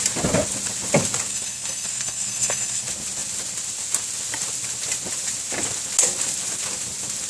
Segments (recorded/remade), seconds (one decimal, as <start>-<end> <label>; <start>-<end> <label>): 0.0-1.3 recorded; 1.3-2.8 remade; 2.8-7.3 recorded